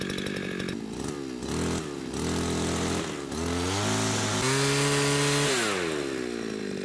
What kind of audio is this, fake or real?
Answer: real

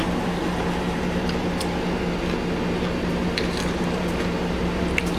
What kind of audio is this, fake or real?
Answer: real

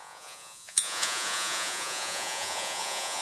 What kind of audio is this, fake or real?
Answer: fake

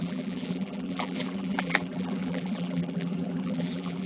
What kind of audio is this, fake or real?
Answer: fake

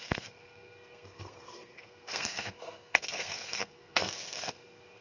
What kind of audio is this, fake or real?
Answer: fake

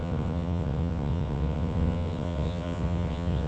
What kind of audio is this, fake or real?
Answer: fake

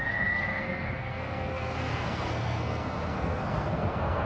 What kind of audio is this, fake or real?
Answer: fake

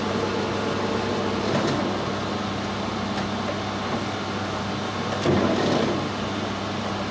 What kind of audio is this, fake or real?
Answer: real